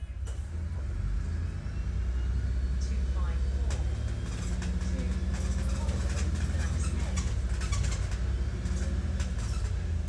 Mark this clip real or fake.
real